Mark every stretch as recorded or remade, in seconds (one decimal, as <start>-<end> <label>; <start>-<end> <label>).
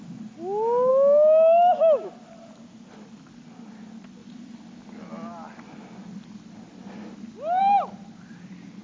0.0-0.9 recorded; 0.9-2.1 remade; 2.1-8.8 recorded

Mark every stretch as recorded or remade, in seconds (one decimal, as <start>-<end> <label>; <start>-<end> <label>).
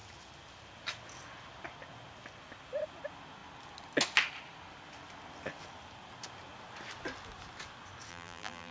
0.0-8.1 recorded; 8.1-8.7 remade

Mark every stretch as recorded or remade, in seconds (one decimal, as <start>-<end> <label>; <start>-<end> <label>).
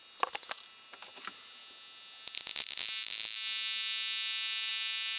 0.0-5.2 recorded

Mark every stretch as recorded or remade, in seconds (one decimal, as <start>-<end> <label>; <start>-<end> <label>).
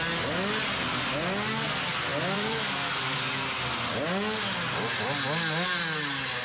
0.0-2.1 recorded; 2.1-2.6 remade; 2.6-6.4 recorded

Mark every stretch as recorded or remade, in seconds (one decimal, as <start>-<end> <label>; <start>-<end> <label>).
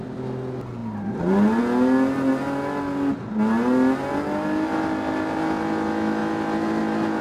0.0-7.2 recorded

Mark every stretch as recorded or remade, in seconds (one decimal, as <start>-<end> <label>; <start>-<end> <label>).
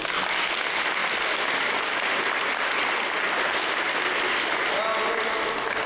0.0-5.9 recorded